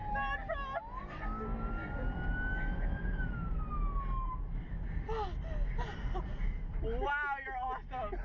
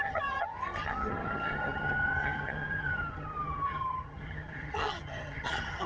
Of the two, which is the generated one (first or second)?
second